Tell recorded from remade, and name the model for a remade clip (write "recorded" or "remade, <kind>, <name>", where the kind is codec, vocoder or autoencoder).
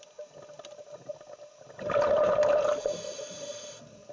recorded